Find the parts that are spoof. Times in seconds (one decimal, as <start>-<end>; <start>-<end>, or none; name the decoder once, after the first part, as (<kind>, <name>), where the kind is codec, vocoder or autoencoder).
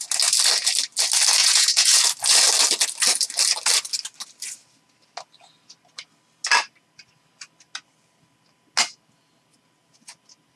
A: 1.4-2.0 (vocoder, Vocos)